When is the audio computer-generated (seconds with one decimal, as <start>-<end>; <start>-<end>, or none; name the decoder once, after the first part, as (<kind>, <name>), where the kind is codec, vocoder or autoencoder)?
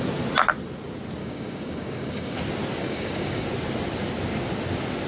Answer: 1.2-2.4 (codec, DAC); 2.8-3.5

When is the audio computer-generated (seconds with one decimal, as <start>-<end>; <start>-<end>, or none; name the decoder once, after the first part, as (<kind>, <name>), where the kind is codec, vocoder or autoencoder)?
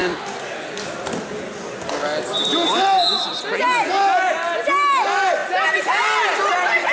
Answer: none